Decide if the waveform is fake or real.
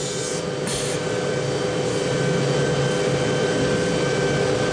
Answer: real